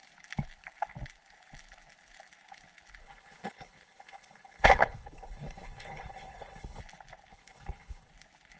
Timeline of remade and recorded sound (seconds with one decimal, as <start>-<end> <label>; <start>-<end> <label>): 0.0-3.0 recorded; 3.0-6.8 remade; 6.8-7.3 recorded; 7.3-8.1 remade; 8.1-8.6 recorded